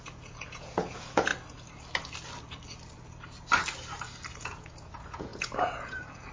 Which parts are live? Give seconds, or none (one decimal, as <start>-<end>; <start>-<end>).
1.3-4.3

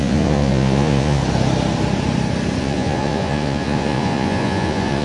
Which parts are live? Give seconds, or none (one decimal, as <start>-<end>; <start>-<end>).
1.2-2.6

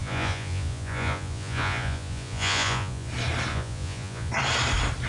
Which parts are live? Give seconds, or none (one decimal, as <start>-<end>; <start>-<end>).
3.1-3.5; 4.3-5.1

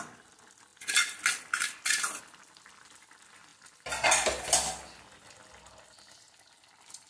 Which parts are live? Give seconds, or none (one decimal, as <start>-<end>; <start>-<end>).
0.0-7.1

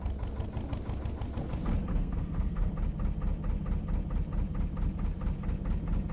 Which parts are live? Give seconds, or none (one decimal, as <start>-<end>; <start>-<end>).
0.0-1.9; 2.7-6.1

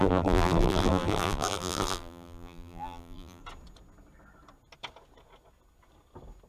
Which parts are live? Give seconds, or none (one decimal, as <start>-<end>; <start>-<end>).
3.4-6.5

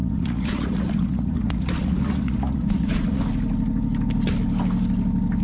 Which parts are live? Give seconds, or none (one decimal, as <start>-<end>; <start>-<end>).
3.2-5.4

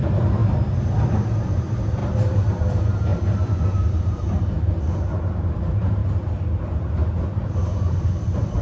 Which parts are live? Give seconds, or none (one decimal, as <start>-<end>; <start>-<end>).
0.4-1.1; 6.0-6.8